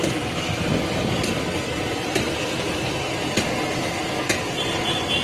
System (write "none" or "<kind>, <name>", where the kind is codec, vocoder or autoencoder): none